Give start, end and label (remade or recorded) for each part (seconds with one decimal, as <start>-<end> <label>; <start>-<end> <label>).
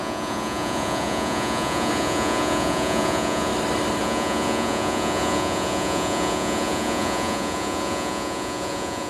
0.0-3.5 remade; 3.5-4.0 recorded; 4.0-9.1 remade